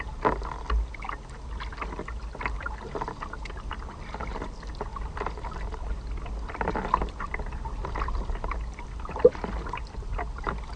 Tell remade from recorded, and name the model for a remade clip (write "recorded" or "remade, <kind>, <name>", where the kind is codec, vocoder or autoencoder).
recorded